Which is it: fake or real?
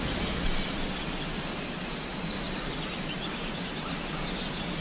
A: real